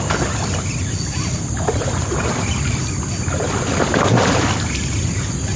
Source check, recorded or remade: recorded